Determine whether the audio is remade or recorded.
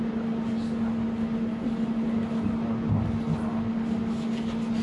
recorded